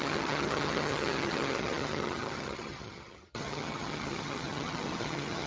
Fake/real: fake